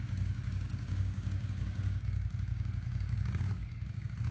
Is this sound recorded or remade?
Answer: remade